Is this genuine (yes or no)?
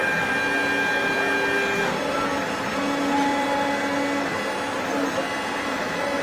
yes